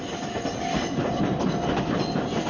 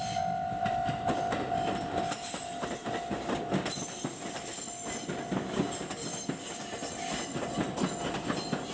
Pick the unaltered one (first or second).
second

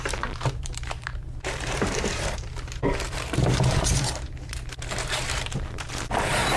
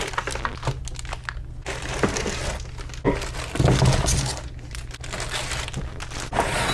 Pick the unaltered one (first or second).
second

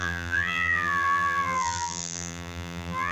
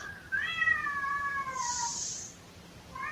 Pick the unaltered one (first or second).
second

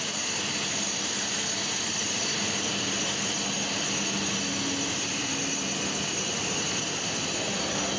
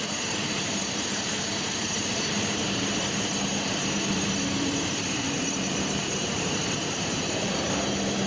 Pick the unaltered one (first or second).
first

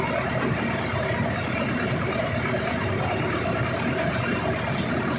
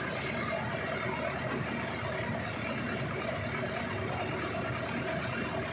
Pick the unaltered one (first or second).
second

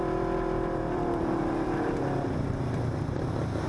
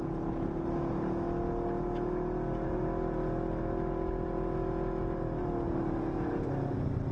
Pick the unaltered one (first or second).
second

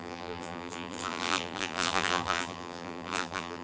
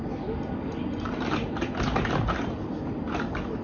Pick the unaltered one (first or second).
second